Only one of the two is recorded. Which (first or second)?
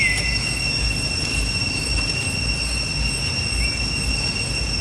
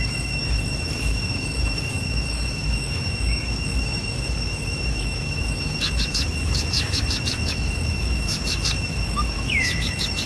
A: first